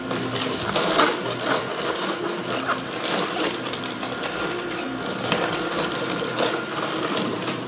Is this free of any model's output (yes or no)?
no